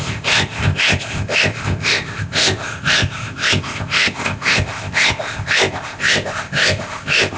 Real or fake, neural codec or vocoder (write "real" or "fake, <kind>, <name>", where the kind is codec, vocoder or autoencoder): fake, codec, ZipCodec